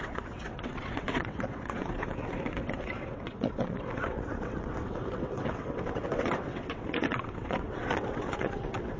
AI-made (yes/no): yes